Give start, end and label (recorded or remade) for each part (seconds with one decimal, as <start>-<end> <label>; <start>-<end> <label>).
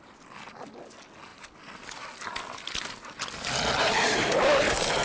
0.0-5.0 recorded